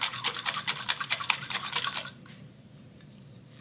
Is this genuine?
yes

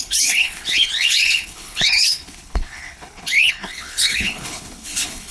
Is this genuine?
no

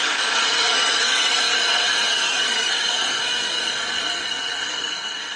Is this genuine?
no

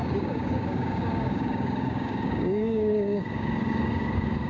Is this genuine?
no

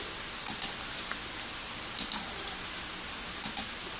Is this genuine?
yes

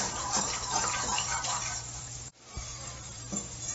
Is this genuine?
no